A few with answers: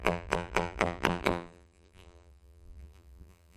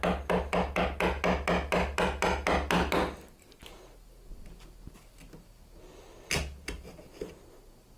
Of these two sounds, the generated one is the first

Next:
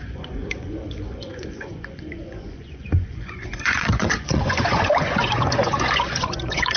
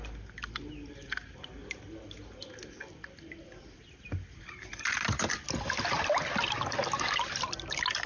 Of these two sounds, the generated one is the first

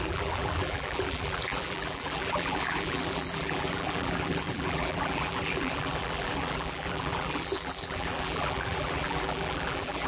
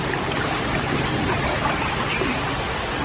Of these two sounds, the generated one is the first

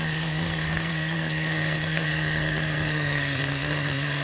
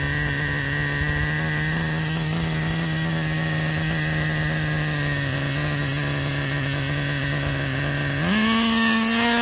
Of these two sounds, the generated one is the first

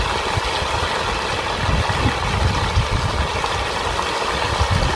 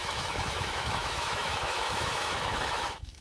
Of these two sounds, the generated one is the second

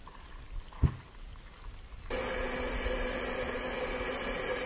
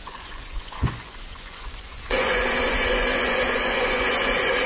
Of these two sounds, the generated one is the second